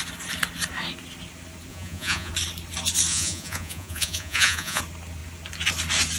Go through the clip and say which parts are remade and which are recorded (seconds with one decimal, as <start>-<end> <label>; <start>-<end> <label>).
0.0-1.7 recorded; 1.7-2.3 remade; 2.3-3.1 recorded; 3.1-4.8 remade; 4.8-6.2 recorded